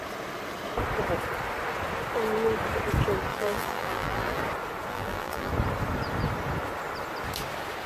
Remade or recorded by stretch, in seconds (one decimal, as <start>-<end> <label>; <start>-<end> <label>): 0.0-3.3 recorded; 3.3-4.4 remade; 4.4-4.9 recorded; 4.9-5.5 remade; 5.5-7.9 recorded